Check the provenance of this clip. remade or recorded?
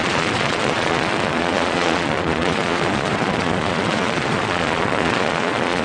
remade